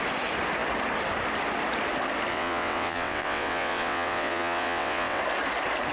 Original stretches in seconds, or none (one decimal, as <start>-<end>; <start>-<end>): 0.0-2.3; 5.2-5.9